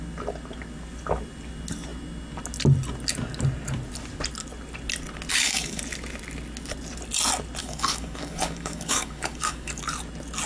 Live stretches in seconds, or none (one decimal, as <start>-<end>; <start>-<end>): 0.0-5.3; 5.8-7.6; 9.8-10.5